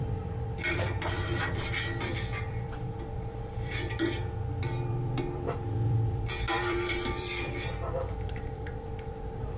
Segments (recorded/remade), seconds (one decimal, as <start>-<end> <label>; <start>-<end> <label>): 0.0-1.3 remade; 1.3-2.4 recorded; 2.4-9.6 remade

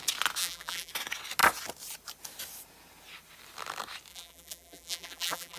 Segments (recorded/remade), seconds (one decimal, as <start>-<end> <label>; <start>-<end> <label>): 0.0-0.4 recorded; 0.4-0.9 remade; 0.9-4.1 recorded; 4.1-5.6 remade

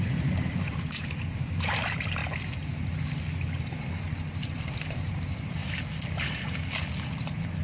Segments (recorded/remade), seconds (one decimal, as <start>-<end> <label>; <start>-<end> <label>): 0.0-2.2 remade; 2.2-3.9 recorded; 3.9-5.6 remade; 5.6-7.1 recorded; 7.1-7.6 remade

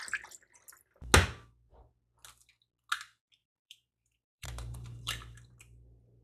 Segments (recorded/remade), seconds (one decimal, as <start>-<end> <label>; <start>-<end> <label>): 0.0-3.4 recorded; 3.4-5.6 remade; 5.6-6.2 recorded